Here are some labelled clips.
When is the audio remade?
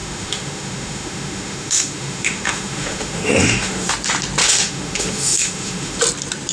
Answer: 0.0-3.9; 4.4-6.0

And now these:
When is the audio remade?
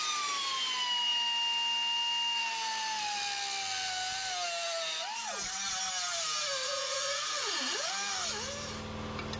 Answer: 6.6-7.9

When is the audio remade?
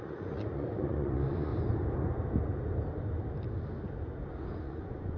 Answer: 0.0-1.5; 4.6-5.2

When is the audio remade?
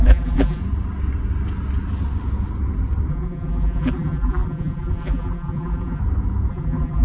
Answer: 0.0-0.6; 3.1-6.0; 6.5-7.0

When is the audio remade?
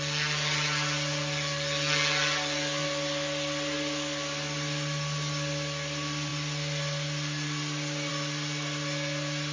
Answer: none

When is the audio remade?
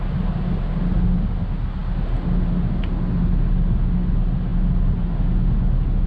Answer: none